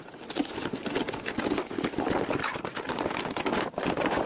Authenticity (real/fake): real